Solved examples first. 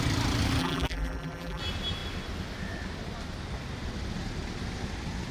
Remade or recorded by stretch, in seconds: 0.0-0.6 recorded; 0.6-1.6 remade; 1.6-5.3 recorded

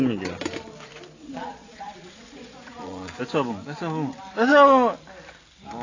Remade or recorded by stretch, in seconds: 0.0-1.2 recorded; 1.2-3.2 remade; 3.2-5.8 recorded

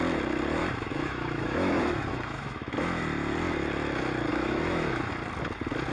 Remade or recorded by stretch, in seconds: 0.0-0.6 recorded; 0.6-3.0 remade; 3.0-4.3 recorded; 4.3-5.1 remade; 5.1-5.9 recorded

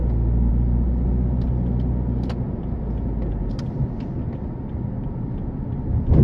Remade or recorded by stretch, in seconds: 0.0-6.2 recorded

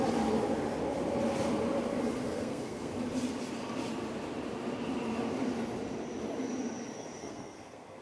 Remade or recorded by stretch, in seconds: 0.0-2.2 recorded; 2.2-2.9 remade; 2.9-7.2 recorded; 7.2-8.0 remade